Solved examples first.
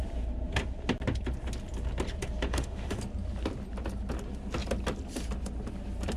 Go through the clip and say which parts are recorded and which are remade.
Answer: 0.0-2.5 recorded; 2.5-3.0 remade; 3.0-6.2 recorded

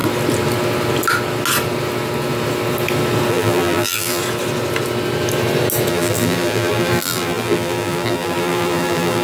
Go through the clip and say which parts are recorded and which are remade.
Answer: 0.0-3.3 recorded; 3.3-4.2 remade; 4.2-5.9 recorded; 5.9-9.2 remade